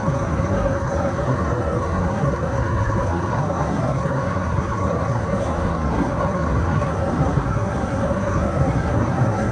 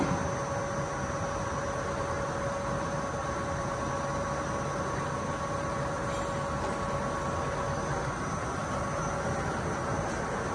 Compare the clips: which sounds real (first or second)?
second